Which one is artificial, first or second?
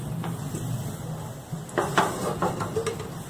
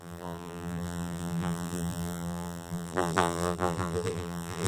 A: second